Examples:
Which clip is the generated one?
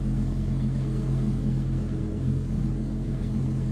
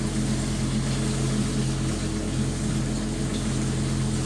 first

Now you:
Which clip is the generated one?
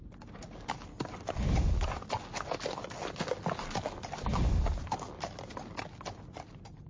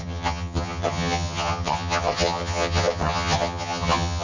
second